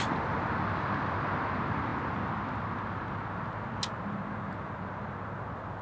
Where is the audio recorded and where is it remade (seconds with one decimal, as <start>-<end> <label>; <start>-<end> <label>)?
0.0-5.8 recorded